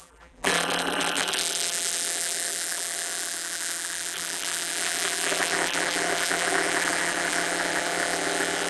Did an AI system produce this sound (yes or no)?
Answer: yes